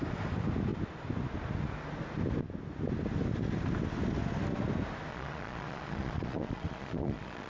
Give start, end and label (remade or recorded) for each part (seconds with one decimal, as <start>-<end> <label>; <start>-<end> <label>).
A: 0.0-5.1 recorded; 5.1-7.5 remade